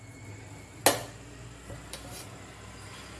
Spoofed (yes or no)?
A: no